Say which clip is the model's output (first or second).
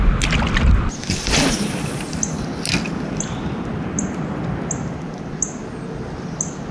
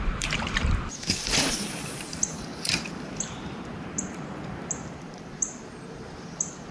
second